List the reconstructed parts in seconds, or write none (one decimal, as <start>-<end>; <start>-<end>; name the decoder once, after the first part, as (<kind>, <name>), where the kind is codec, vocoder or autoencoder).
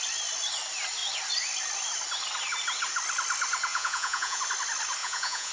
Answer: 3.7-4.4 (vocoder, Vocos); 5.0-5.5